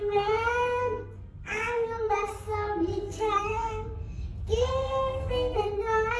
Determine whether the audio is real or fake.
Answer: fake